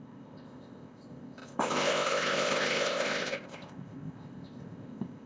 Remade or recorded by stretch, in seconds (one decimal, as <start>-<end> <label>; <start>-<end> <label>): 0.0-5.3 remade